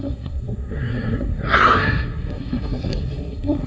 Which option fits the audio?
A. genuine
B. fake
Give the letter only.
B